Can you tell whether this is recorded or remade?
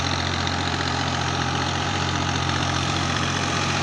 remade